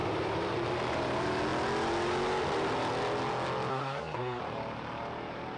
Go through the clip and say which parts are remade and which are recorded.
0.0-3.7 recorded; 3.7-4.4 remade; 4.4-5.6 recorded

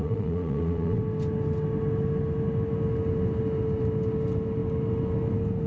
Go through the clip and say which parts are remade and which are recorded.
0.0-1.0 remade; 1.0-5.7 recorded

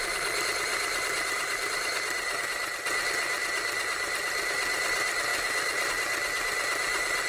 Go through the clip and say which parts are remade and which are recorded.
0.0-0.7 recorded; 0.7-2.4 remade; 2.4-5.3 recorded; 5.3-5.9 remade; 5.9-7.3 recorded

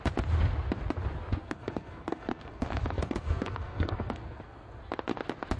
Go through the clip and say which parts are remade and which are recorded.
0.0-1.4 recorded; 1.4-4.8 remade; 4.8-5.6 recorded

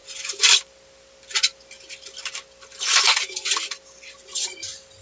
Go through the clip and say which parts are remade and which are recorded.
0.0-5.0 recorded

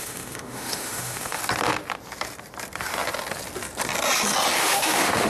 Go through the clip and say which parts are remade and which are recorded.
0.0-1.4 remade; 1.4-4.6 recorded; 4.6-5.3 remade

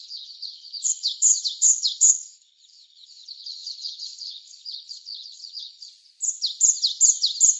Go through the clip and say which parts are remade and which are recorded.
0.0-5.9 remade; 5.9-7.6 recorded

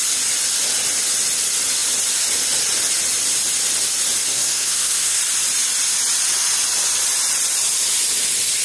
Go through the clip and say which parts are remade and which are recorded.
0.0-4.3 recorded; 4.3-5.2 remade; 5.2-8.6 recorded